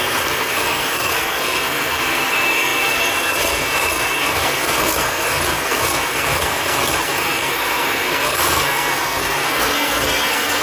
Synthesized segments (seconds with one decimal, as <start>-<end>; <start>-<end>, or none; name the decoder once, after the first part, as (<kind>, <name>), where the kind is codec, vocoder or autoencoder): 0.0-10.6 (codec, SNAC)

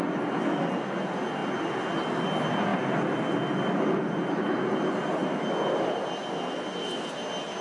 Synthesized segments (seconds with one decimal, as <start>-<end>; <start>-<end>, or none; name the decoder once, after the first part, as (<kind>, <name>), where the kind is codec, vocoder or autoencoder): none